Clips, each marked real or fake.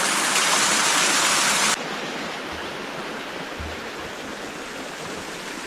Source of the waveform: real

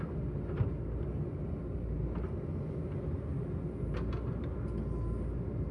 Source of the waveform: real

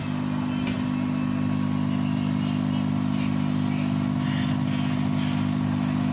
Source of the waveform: real